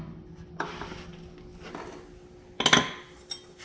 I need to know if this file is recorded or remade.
recorded